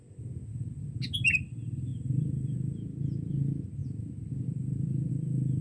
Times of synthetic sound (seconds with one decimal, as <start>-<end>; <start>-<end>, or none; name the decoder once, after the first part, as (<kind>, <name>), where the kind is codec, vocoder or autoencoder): none